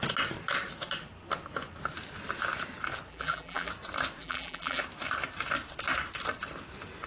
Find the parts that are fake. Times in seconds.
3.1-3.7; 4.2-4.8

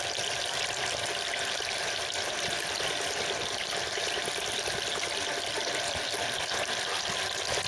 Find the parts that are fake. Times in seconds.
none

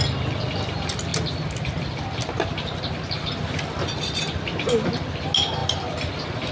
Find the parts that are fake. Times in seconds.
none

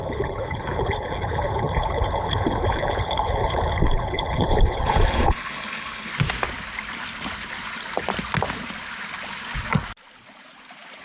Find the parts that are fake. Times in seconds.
0.0-6.1

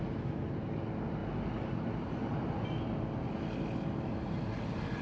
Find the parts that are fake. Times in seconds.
none

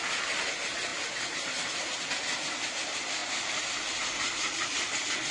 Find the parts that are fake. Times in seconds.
none

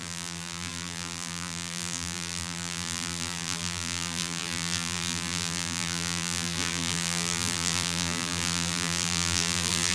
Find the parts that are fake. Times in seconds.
0.0-9.9

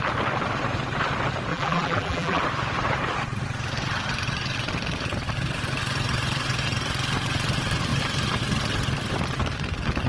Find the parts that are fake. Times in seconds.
1.5-2.4